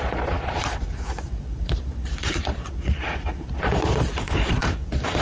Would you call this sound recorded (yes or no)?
no